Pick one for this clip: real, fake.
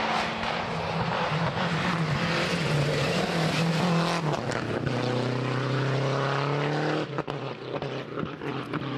real